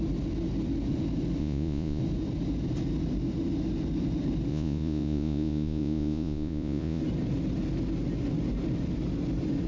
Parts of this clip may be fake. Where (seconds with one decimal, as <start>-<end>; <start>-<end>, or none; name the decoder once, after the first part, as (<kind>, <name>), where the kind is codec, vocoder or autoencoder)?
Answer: 1.4-2.0 (vocoder, Vocos); 4.5-7.0